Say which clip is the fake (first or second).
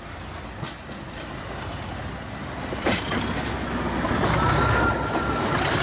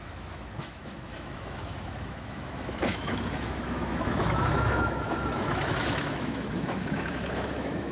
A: second